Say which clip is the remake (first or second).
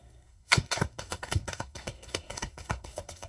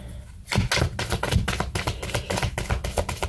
first